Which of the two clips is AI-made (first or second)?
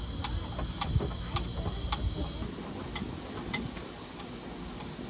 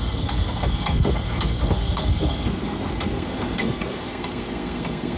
second